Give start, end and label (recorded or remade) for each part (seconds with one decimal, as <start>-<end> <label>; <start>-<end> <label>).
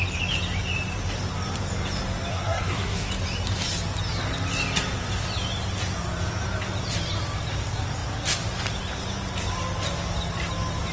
0.0-2.3 recorded; 2.3-3.1 remade; 3.1-10.9 recorded